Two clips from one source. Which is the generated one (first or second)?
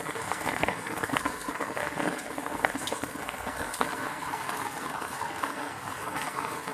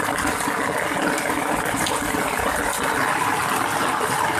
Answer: first